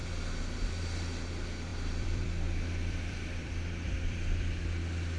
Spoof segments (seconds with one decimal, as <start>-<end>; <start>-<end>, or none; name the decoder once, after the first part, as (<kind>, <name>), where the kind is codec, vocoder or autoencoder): 1.7-4.6 (vocoder, BigVGAN v2)

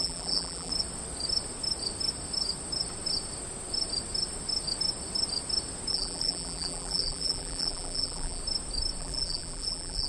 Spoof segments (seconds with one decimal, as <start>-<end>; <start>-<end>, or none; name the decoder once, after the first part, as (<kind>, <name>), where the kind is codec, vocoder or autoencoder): 0.0-0.7 (vocoder, BigVGAN v2); 5.9-8.4; 9.0-10.1

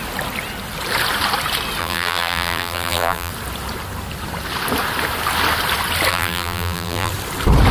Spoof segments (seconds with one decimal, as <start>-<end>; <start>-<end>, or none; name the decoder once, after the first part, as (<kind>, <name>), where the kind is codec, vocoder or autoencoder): 1.8-3.3 (vocoder, BigVGAN v2); 6.1-7.1

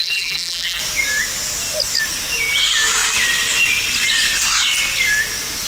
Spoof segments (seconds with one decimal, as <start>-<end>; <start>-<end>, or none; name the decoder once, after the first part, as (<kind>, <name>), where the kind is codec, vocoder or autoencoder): 0.0-0.8 (vocoder, BigVGAN v2)

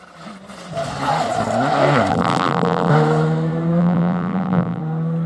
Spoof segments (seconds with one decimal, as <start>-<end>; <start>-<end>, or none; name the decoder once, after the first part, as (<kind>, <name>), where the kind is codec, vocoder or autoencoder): 2.1-2.9 (vocoder, BigVGAN v2); 3.8-4.8

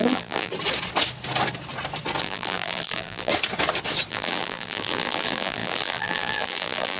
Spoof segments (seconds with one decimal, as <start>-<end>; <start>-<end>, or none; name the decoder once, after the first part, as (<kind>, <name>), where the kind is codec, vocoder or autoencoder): 0.0-0.5 (vocoder, BigVGAN v2); 2.2-3.3; 4.1-7.0

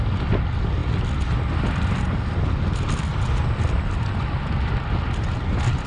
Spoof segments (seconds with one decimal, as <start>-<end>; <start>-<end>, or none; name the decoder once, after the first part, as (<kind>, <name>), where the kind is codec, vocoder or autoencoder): none